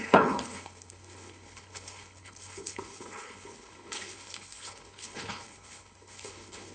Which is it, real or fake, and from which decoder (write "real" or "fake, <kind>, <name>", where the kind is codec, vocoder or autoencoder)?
fake, codec, HILCodec